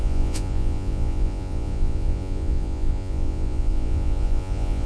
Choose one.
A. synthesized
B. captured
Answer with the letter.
A